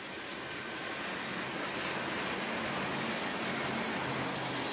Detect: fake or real real